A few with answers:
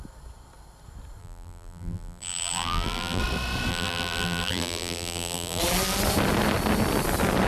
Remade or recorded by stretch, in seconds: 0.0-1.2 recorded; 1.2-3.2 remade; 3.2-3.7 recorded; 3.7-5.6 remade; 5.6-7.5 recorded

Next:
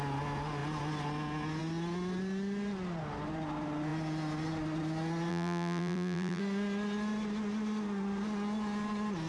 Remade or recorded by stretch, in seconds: 0.0-5.3 recorded; 5.3-6.4 remade; 6.4-9.3 recorded